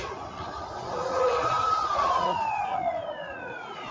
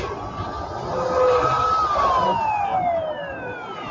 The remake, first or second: first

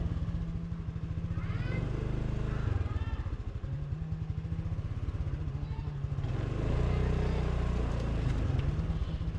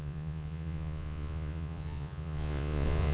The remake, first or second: second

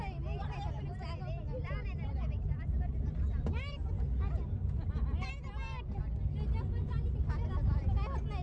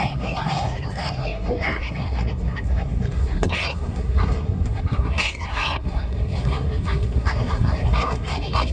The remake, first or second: second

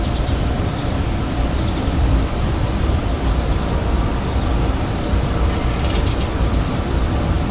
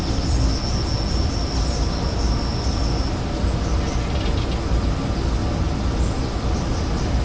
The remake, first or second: first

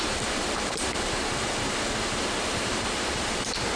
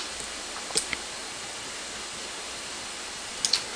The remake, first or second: first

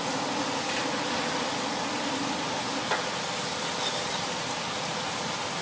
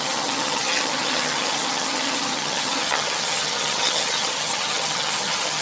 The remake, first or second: second